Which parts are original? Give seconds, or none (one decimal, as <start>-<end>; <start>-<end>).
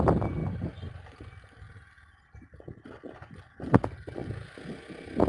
0.0-5.3